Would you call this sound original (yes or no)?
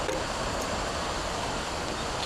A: yes